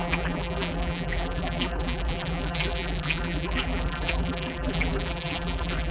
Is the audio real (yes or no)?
no